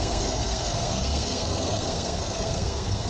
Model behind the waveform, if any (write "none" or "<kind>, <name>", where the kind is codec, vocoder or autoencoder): codec, SNAC